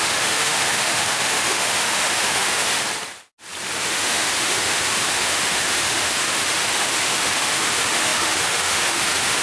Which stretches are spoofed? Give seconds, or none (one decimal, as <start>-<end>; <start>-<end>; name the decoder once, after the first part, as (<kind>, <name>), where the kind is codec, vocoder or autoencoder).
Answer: 0.0-2.8 (autoencoder, DAC-VAE); 3.8-9.4